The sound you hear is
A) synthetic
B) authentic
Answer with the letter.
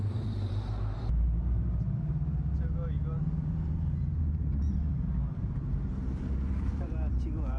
A